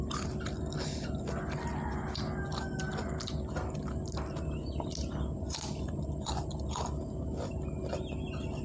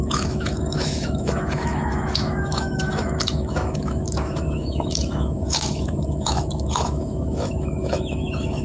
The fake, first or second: second